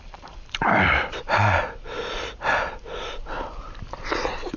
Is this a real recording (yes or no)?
yes